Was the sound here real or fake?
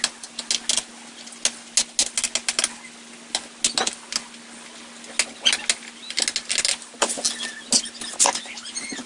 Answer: real